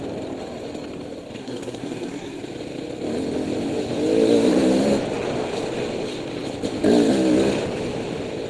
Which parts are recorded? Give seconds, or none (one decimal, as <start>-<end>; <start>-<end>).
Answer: 0.0-1.4; 2.4-8.5